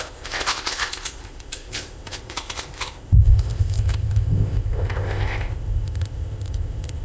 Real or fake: fake